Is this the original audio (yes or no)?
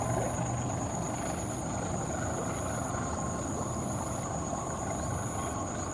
yes